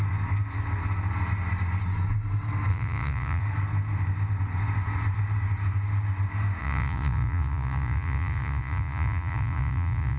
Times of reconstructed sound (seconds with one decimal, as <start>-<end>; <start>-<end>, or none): 2.7-3.4; 6.6-10.2